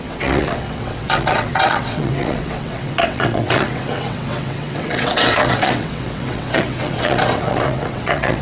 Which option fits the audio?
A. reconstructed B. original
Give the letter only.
A